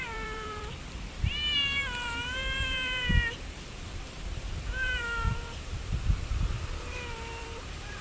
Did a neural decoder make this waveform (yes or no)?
yes